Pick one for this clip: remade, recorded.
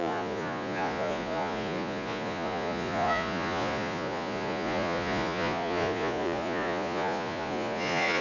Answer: remade